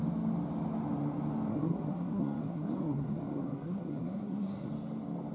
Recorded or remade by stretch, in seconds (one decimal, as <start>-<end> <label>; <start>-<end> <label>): 0.0-1.5 recorded; 1.5-4.7 remade; 4.7-5.3 recorded